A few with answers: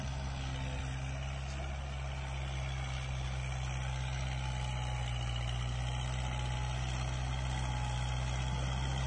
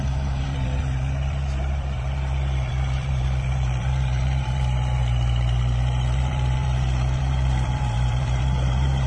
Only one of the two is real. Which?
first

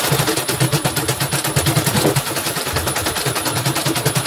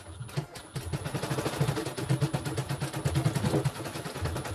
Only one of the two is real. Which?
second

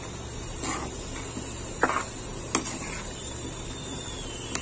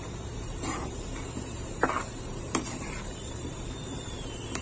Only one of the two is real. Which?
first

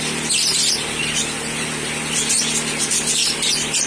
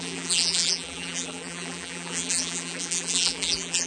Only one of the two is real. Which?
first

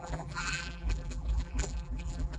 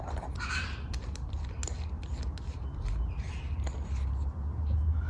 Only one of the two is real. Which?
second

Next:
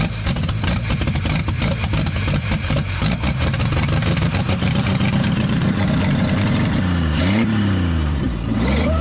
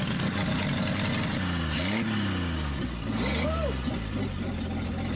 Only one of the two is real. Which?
second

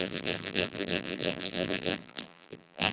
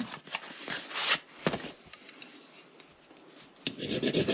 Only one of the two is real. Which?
second